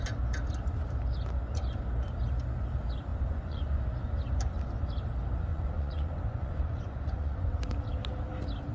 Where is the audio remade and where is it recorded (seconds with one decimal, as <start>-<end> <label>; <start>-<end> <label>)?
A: 0.0-3.1 recorded; 3.1-3.8 remade; 3.8-5.5 recorded; 5.5-7.5 remade; 7.5-8.7 recorded